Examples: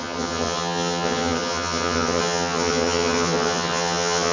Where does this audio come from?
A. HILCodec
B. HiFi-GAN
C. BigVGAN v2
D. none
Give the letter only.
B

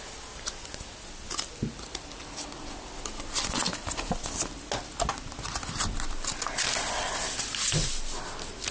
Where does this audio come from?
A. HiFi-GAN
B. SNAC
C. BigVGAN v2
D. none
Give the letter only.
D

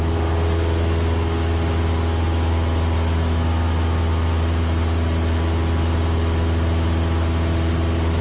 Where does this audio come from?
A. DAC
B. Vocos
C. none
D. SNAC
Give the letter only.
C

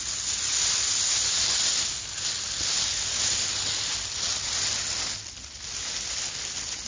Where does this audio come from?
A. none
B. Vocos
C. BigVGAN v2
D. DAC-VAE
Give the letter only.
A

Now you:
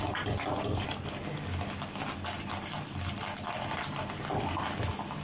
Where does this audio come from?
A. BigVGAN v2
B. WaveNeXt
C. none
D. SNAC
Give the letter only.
C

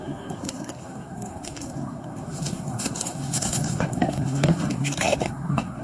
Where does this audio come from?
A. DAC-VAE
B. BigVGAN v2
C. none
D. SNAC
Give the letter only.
D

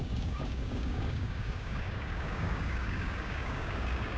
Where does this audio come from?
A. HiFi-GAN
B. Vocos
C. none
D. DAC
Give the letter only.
D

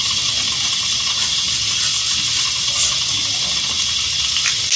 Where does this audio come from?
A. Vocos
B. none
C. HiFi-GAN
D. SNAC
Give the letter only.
B